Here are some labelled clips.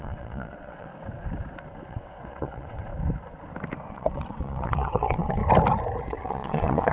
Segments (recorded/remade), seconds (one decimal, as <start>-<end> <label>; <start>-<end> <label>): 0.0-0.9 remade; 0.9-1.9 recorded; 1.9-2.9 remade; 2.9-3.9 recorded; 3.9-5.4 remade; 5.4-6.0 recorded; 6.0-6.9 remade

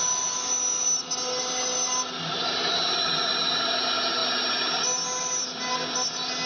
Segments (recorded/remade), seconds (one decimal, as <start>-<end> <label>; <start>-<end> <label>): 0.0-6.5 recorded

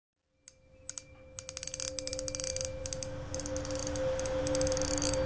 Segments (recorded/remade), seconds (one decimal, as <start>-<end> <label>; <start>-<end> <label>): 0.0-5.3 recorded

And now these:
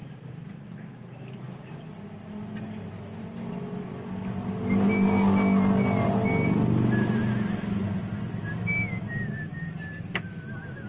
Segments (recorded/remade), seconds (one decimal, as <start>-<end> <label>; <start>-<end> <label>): 0.0-10.9 recorded